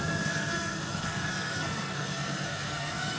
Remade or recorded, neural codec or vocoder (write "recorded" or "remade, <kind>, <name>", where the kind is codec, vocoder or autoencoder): remade, codec, SNAC